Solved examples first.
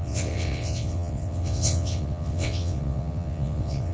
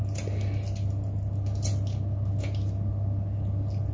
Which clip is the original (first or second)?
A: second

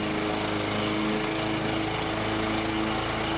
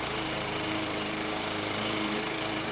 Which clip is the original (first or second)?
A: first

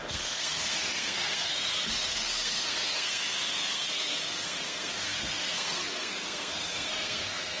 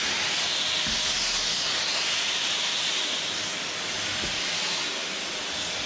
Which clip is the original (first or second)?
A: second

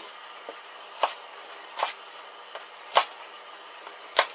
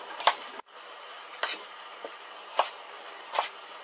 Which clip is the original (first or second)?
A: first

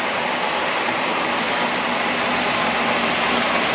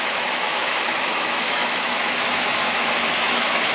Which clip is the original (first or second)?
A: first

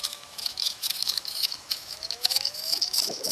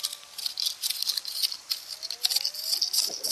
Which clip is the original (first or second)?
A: second